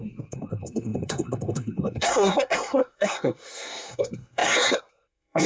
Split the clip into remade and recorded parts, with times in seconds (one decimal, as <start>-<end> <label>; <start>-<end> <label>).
0.0-5.5 remade

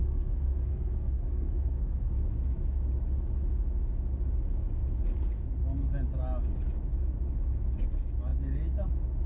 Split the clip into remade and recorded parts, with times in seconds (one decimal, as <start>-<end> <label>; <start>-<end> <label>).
0.0-2.1 remade; 2.1-9.3 recorded